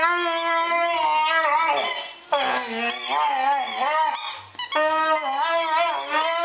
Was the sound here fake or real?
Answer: real